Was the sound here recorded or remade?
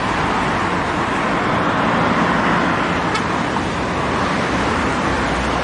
recorded